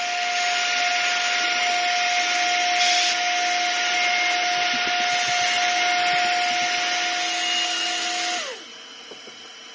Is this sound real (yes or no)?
yes